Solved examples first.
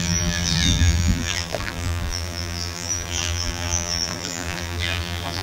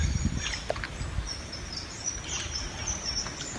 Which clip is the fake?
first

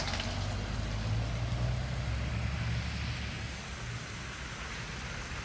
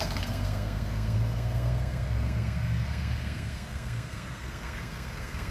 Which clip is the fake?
second